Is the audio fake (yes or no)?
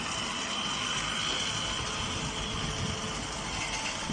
no